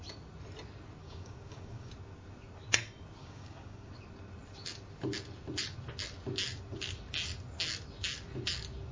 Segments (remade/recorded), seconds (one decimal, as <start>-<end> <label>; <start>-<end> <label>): 0.0-1.0 recorded; 1.0-1.9 remade; 1.9-3.2 recorded; 3.2-3.9 remade; 3.9-8.9 recorded